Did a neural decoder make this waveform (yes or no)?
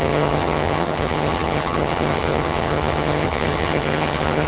yes